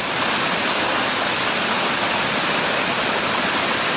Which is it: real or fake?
real